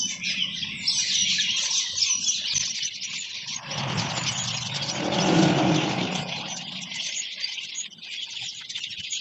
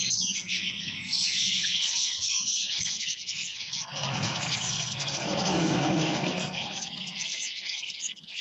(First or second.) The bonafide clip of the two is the first